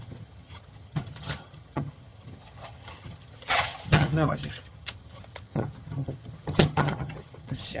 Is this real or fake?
fake